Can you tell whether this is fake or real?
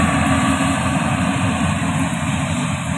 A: real